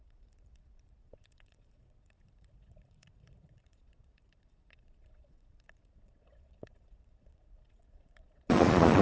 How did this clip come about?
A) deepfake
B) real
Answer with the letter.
A